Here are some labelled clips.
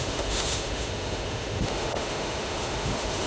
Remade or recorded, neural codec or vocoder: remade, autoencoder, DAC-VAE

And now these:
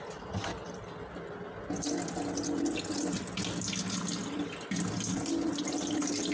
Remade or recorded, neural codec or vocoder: recorded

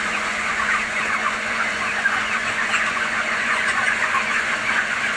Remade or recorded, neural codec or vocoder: remade, vocoder, Vocos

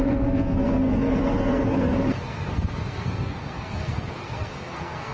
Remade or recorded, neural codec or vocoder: remade, codec, SNAC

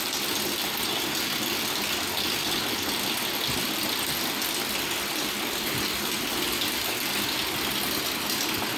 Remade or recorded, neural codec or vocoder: recorded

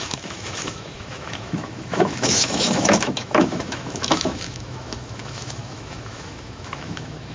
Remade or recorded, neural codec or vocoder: remade, autoencoder, DAC-VAE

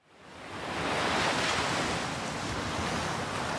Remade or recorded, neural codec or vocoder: recorded